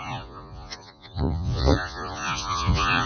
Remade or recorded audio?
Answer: remade